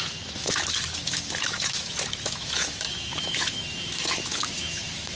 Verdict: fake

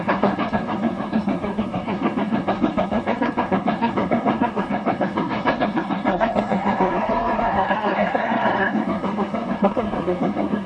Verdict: fake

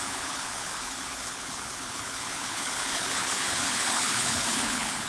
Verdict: fake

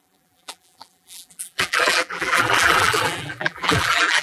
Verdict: fake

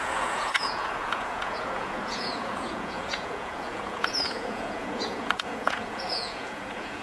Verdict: fake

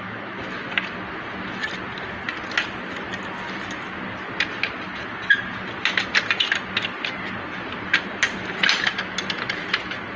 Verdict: real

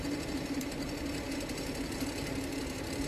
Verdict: fake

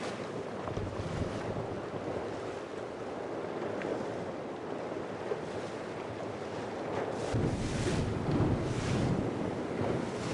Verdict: real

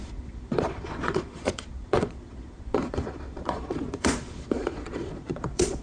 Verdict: fake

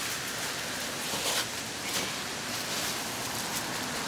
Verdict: real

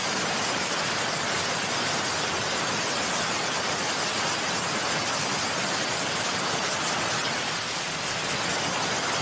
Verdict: real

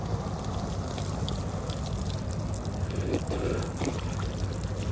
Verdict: real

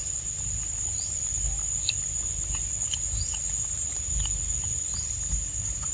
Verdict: real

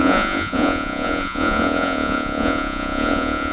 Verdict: fake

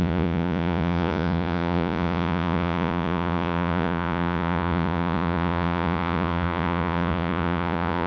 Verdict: fake